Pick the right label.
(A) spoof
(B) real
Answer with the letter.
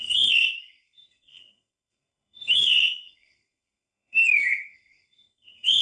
A